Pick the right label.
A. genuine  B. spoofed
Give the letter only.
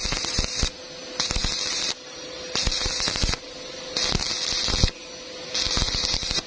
A